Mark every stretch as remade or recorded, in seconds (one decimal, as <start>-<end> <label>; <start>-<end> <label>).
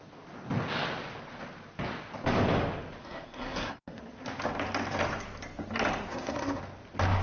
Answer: 0.0-3.0 recorded; 3.0-4.0 remade; 4.0-6.1 recorded; 6.1-6.6 remade; 6.6-7.2 recorded